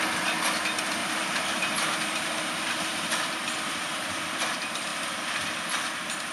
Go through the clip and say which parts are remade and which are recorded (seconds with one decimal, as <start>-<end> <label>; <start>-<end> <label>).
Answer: 0.0-1.0 recorded; 1.0-4.1 remade; 4.1-6.3 recorded